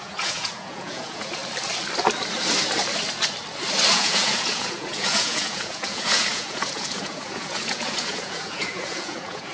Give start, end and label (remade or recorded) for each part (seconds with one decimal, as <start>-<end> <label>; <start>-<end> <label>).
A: 0.0-1.4 remade; 1.4-3.9 recorded; 3.9-9.5 remade